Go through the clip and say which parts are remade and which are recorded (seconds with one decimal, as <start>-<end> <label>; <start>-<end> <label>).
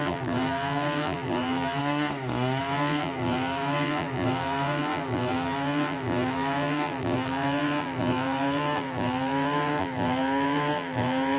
0.0-1.8 remade; 1.8-2.6 recorded; 2.6-11.4 remade